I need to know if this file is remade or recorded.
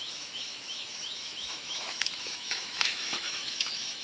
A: remade